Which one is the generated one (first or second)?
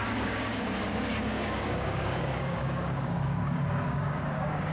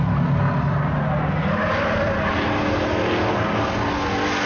first